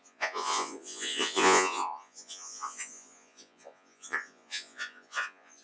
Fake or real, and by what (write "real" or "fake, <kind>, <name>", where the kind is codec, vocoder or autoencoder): fake, vocoder, Vocos